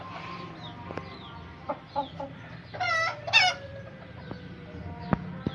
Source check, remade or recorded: recorded